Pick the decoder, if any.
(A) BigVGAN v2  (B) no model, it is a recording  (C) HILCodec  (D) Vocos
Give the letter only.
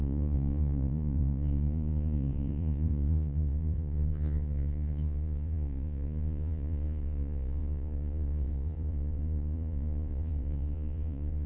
D